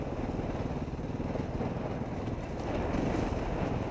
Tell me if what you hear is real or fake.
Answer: real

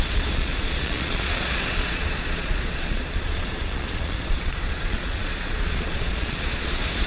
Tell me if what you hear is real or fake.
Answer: fake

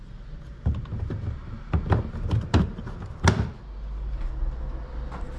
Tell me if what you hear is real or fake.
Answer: real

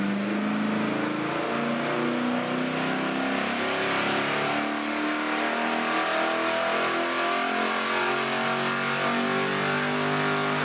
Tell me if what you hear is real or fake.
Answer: real